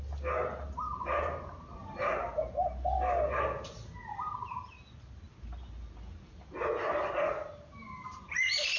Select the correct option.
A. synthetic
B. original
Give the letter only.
B